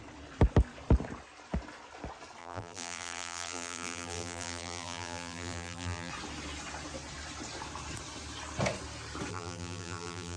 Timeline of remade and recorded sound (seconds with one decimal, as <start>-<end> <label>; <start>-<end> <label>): 0.0-2.4 recorded; 2.4-6.1 remade; 6.1-9.3 recorded; 9.3-10.4 remade